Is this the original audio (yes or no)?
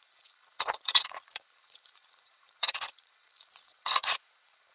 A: no